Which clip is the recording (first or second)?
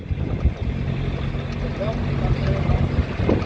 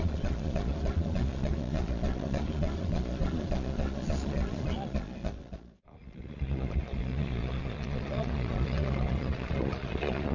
first